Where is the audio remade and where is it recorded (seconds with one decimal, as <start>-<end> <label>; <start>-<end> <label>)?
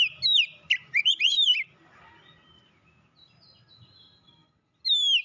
0.0-0.8 recorded; 0.8-1.5 remade; 1.5-5.2 recorded